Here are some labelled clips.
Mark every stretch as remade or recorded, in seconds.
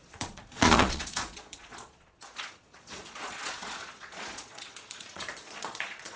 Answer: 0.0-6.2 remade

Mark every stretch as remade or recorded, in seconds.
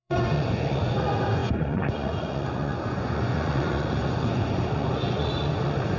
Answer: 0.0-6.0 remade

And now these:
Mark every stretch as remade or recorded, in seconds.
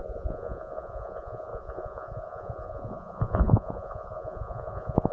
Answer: 0.0-5.1 remade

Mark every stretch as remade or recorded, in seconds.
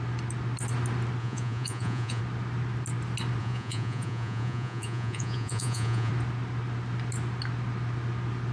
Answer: 0.0-1.2 recorded; 1.2-2.2 remade; 2.2-3.4 recorded; 3.4-6.1 remade; 6.1-8.5 recorded